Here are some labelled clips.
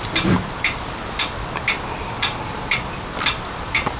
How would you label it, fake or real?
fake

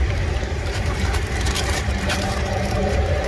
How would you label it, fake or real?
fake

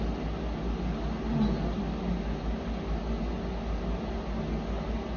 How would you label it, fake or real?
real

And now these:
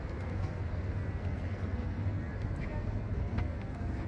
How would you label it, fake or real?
fake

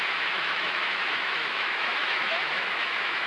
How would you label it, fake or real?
fake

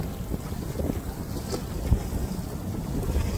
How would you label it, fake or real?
real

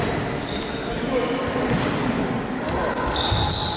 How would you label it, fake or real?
real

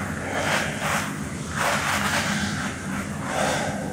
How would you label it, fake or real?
real